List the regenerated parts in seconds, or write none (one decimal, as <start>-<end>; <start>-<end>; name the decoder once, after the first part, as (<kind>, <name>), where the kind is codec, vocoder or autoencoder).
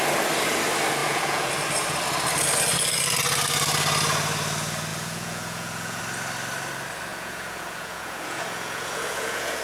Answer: 1.0-1.5 (vocoder, Vocos); 4.9-6.0; 7.1-9.6